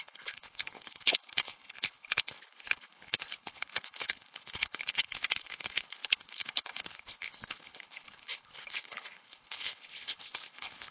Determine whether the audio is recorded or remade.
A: remade